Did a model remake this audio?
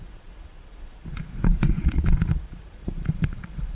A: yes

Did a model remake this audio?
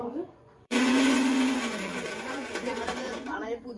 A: yes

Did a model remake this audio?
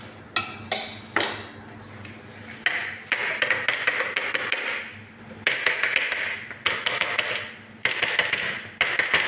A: no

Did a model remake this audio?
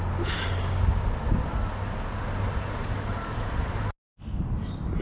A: no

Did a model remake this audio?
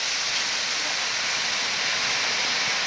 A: no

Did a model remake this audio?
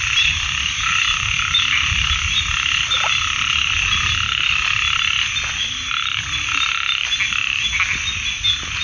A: no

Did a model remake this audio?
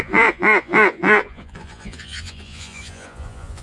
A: yes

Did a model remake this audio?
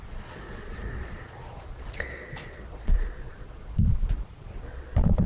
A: yes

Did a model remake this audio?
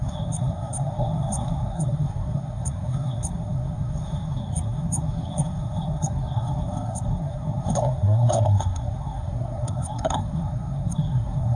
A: yes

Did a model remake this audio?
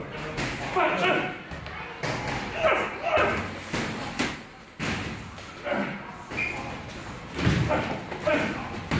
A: no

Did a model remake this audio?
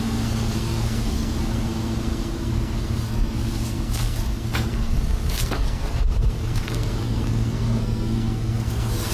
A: yes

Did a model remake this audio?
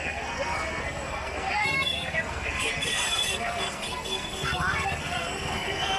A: yes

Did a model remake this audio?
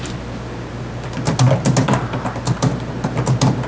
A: no